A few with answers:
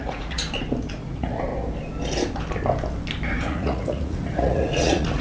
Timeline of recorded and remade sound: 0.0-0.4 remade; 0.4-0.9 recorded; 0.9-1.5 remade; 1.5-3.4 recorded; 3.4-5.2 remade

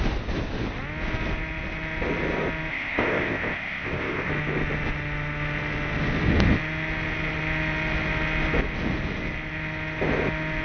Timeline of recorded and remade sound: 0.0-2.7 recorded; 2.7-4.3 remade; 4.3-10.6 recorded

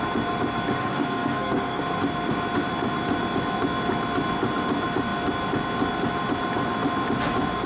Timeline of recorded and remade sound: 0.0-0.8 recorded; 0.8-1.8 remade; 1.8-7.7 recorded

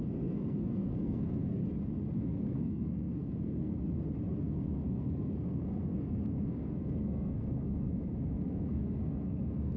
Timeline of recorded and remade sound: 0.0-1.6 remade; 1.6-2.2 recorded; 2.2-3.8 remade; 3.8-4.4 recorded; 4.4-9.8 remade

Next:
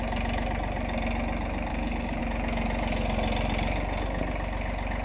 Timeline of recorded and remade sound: 0.0-1.7 recorded; 1.7-2.2 remade; 2.2-5.0 recorded

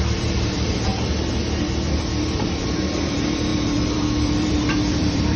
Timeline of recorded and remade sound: 0.0-0.9 remade; 0.9-2.0 recorded; 2.0-5.4 remade

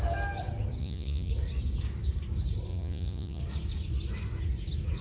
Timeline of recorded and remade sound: 0.0-0.8 recorded; 0.8-1.3 remade; 1.3-2.7 recorded; 2.7-3.4 remade; 3.4-5.0 recorded